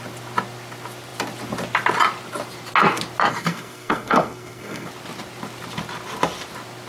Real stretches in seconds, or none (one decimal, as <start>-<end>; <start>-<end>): 0.0-3.3; 4.9-6.9